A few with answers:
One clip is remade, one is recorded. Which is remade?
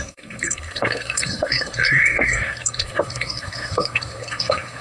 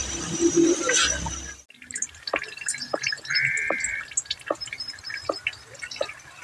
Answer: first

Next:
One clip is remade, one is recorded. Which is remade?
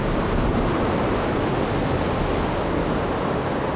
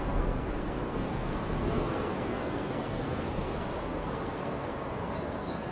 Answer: second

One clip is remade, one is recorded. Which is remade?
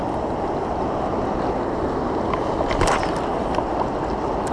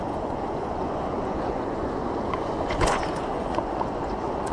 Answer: second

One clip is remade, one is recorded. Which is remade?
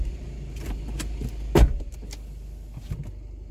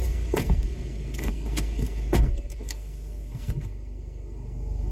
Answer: second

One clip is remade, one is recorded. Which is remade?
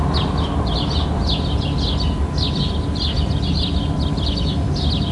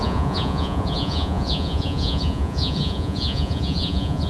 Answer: second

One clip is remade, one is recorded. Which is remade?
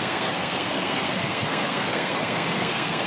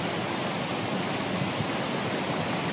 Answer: first